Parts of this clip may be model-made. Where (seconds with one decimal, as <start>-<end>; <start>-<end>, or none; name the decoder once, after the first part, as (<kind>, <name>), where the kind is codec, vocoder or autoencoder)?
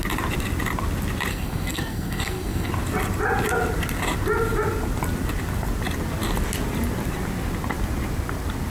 1.3-2.7 (codec, SNAC)